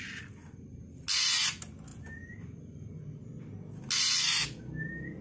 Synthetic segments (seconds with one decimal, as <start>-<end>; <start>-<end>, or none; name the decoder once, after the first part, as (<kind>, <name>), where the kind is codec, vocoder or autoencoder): none